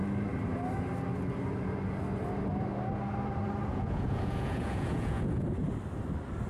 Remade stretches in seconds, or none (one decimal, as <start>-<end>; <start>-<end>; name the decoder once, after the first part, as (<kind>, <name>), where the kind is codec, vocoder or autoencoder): 3.7-5.6 (vocoder, Vocos)